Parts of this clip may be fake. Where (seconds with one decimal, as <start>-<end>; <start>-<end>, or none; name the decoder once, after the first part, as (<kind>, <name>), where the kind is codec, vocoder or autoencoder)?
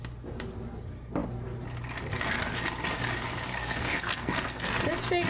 3.5-4.7 (codec, SNAC)